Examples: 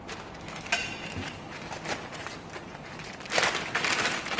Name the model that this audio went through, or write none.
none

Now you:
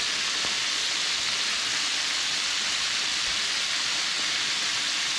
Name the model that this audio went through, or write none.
none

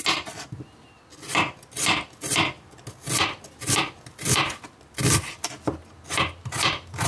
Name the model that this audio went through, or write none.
none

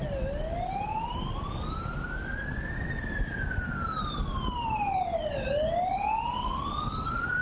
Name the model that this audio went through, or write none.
none